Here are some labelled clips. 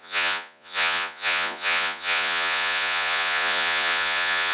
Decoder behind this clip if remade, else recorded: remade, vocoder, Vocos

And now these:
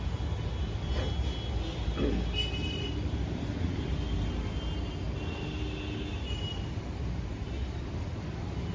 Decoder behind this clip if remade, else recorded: recorded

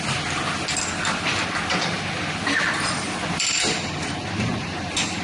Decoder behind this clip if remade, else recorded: recorded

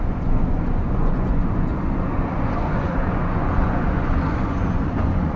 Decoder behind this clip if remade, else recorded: remade, vocoder, Vocos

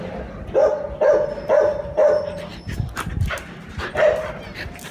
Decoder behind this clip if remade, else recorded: recorded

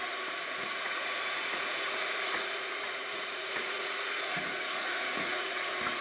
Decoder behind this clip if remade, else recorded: remade, vocoder, Vocos